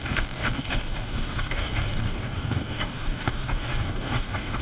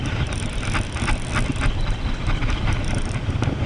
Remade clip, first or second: first